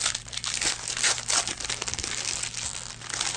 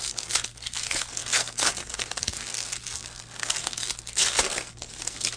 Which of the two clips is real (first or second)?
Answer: first